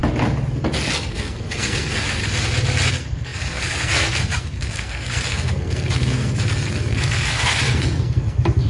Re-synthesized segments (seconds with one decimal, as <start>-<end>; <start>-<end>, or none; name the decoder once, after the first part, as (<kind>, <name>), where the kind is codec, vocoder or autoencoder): 0.9-2.2 (codec, SNAC); 2.9-8.7